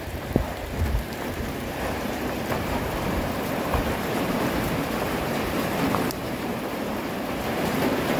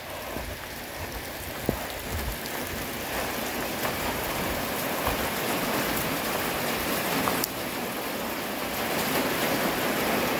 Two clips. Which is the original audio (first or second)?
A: second